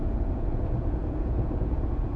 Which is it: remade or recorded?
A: remade